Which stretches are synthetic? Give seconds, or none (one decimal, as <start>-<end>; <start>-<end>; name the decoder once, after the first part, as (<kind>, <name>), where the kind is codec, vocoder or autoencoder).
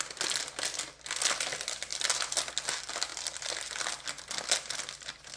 none